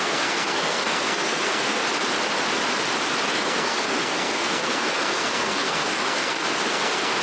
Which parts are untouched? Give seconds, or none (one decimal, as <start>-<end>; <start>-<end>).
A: 1.8-3.3